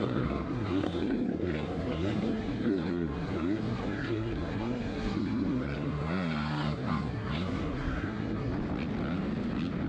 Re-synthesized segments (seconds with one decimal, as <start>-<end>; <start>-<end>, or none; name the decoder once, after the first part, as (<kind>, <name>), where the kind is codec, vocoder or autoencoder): 0.0-8.5 (codec, SNAC)